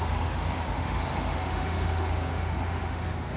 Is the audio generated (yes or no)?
yes